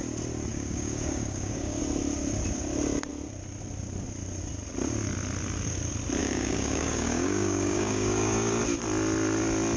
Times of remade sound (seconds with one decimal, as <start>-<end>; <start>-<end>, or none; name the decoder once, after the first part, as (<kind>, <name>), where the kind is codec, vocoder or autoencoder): 0.5-1.8 (codec, DAC); 6.2-8.6